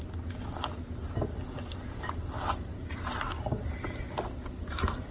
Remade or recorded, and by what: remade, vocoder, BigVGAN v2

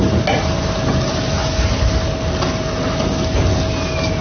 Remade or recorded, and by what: recorded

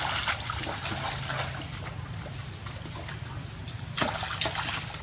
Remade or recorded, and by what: recorded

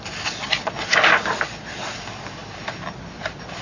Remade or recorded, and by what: recorded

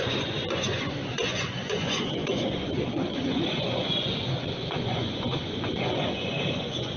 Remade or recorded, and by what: remade, vocoder, Vocos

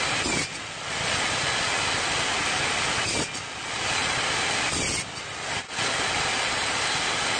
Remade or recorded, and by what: recorded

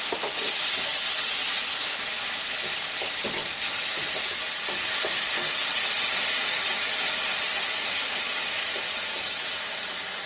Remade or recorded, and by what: recorded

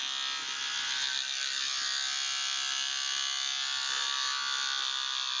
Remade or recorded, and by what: recorded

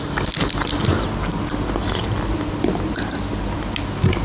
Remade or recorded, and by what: recorded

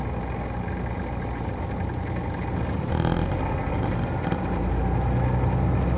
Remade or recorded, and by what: recorded